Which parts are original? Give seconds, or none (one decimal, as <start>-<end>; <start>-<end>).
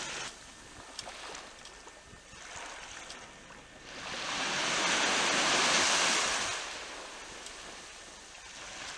0.0-9.0